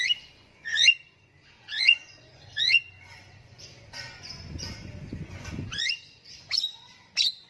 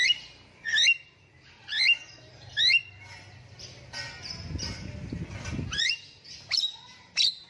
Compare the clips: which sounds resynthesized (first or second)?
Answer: first